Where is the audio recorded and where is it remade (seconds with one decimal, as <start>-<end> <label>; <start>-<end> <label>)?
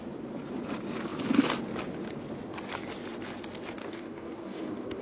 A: 0.0-3.8 recorded; 3.8-5.0 remade